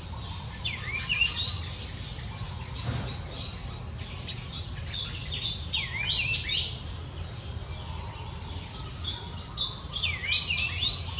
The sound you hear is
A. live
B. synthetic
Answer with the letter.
A